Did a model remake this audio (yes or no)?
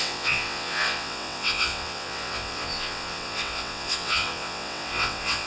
yes